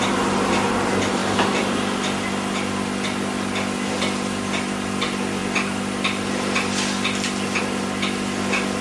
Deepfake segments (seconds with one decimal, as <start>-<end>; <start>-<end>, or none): none